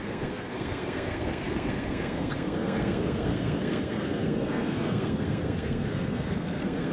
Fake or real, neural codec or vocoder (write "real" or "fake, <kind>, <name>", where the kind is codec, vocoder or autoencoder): fake, codec, SNAC